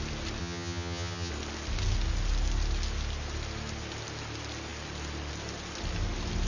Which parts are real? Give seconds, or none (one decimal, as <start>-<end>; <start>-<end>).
0.0-0.4; 1.3-6.5